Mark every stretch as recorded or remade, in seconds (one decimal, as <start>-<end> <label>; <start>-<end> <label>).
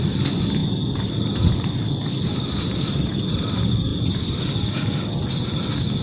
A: 0.0-6.0 recorded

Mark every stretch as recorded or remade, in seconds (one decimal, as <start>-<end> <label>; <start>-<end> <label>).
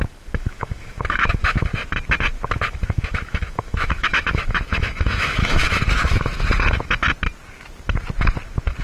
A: 0.0-1.7 remade; 1.7-2.5 recorded; 2.5-5.6 remade; 5.6-8.8 recorded